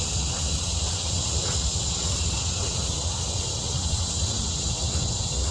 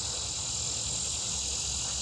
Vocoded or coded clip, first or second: first